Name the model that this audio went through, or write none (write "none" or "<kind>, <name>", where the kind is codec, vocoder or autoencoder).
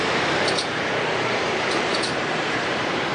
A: vocoder, BigVGAN v2